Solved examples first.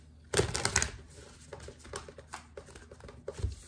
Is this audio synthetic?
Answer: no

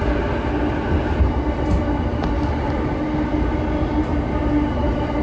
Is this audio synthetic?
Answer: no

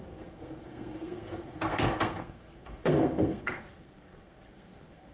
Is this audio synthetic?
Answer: yes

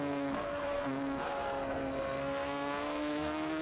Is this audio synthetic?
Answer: yes